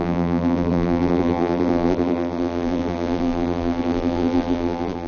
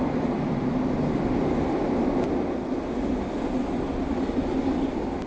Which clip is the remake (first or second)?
first